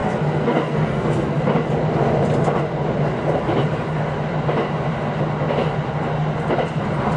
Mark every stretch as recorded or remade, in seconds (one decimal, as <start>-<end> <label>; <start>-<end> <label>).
0.0-1.4 remade; 1.4-7.2 recorded